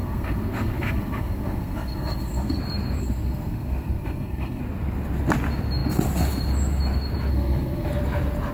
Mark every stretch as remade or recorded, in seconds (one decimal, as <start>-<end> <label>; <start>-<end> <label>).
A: 0.0-2.6 remade; 2.6-3.0 recorded; 3.0-4.6 remade; 4.6-7.3 recorded; 7.3-7.9 remade; 7.9-8.5 recorded